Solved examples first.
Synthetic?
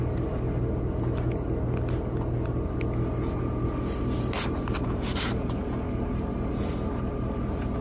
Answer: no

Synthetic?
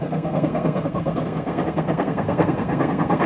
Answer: yes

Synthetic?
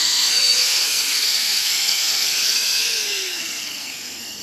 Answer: yes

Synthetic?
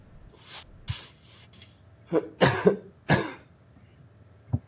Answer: no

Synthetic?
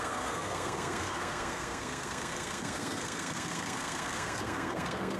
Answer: yes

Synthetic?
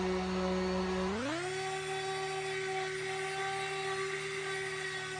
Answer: no